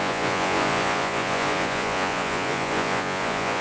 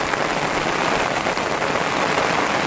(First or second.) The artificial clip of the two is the first